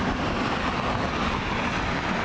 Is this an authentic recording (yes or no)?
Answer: yes